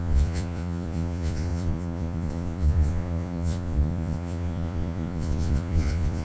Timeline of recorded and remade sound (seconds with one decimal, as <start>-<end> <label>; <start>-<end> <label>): 0.0-6.2 remade